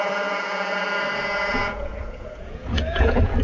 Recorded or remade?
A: remade